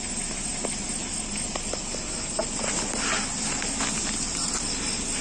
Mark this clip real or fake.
real